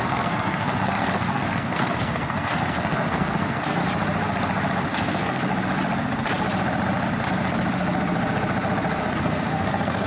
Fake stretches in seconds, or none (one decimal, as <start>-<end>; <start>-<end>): 0.0-3.8; 4.9-5.4; 9.2-10.1